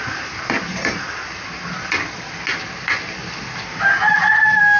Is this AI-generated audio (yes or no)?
no